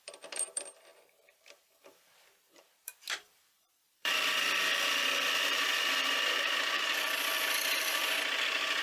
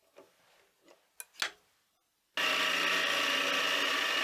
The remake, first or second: first